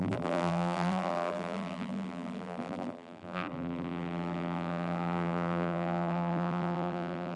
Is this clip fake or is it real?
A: fake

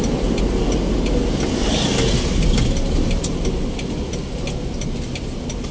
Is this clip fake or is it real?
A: real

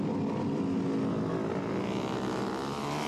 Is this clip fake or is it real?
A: real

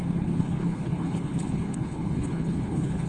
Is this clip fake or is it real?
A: fake